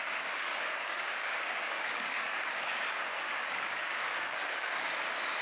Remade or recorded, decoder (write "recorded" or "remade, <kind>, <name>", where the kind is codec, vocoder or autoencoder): remade, codec, DAC